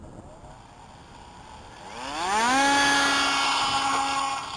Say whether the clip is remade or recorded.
recorded